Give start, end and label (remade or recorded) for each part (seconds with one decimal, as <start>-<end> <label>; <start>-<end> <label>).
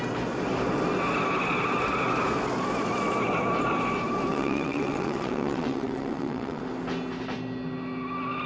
0.0-4.3 recorded; 4.3-6.6 remade; 6.6-8.5 recorded